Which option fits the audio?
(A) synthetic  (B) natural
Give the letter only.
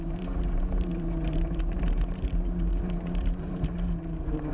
A